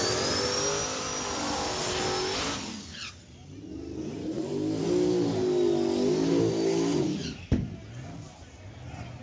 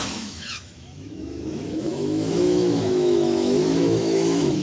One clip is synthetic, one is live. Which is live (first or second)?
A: first